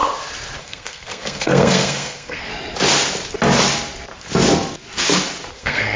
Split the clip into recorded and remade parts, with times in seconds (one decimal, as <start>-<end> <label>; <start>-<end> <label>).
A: 0.0-0.6 recorded; 0.6-2.5 remade; 2.5-5.5 recorded; 5.5-6.0 remade